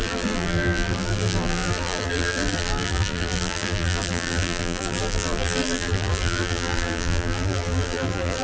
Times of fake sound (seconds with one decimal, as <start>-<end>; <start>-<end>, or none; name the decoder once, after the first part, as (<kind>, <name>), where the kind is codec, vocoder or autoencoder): 0.0-8.4 (vocoder, BigVGAN v2)